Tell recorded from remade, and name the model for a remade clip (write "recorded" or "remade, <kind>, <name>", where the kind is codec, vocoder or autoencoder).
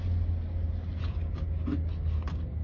recorded